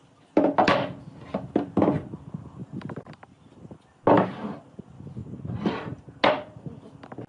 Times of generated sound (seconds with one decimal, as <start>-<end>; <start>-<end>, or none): 2.6-3.1; 5.2-6.0